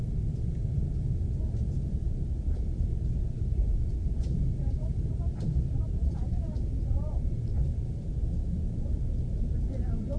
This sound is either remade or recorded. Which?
remade